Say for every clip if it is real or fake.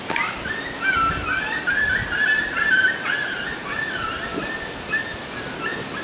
real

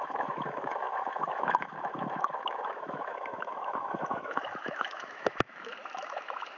fake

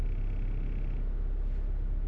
real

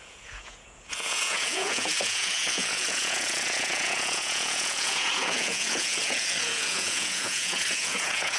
fake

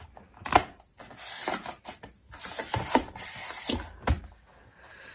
real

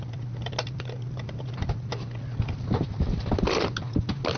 real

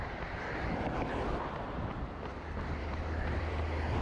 fake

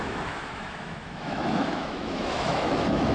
fake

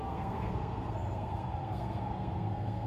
fake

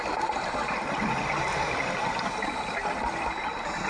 real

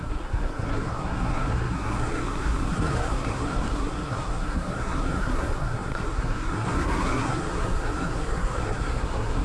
fake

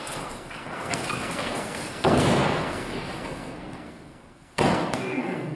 fake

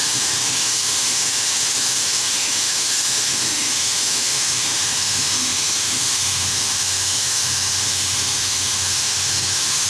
fake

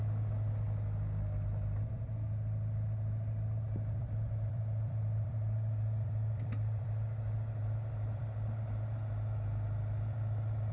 fake